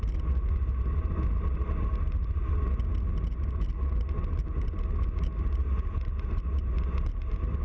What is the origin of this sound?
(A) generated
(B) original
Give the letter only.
B